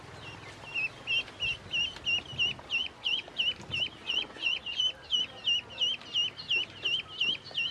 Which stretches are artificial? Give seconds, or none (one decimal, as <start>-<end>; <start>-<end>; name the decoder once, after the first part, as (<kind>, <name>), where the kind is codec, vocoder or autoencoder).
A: 2.8-3.3 (vocoder, Vocos); 4.0-4.8